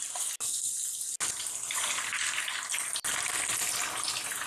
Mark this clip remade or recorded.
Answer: recorded